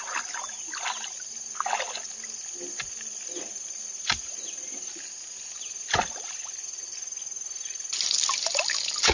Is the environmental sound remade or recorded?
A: recorded